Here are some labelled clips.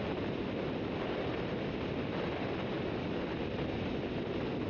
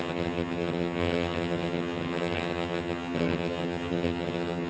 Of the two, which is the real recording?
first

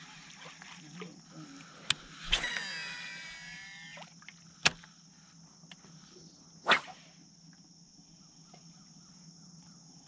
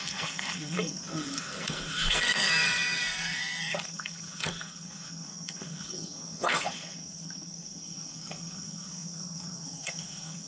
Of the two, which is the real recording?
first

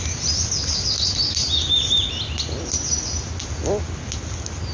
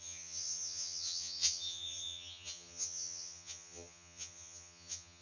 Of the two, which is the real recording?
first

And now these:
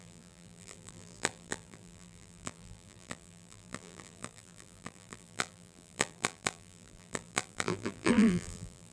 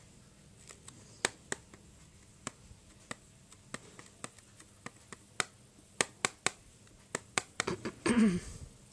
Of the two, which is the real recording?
second